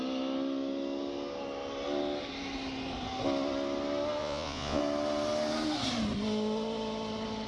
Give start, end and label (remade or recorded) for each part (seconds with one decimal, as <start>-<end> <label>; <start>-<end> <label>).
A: 0.0-4.2 recorded; 4.2-4.8 remade; 4.8-7.5 recorded